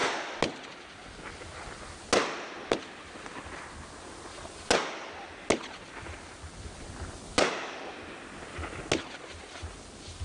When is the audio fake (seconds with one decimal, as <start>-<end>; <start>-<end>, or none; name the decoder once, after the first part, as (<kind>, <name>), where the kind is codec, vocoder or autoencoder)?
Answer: none